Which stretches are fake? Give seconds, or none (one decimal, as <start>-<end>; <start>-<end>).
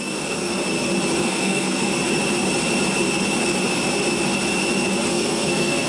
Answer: 0.0-0.5; 1.2-1.9; 5.1-5.9